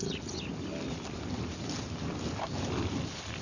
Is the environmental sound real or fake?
real